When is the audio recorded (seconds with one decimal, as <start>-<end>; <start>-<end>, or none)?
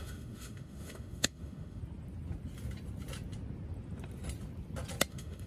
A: 1.8-5.1